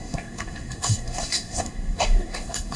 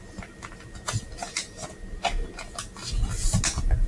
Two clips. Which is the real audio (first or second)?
second